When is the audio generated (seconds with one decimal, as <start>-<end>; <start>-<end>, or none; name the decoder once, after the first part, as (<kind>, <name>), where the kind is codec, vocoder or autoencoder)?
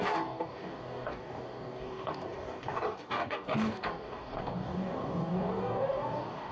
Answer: 0.0-6.5 (codec, DAC)